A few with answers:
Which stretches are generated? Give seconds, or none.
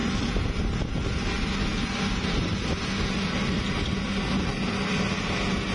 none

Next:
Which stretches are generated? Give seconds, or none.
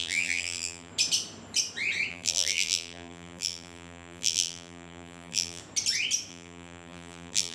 0.0-0.9 (vocoder, BigVGAN v2); 2.1-5.6; 6.3-7.5